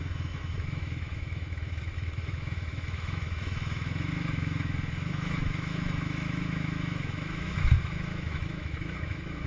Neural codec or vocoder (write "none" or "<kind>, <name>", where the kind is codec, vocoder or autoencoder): autoencoder, DAC-VAE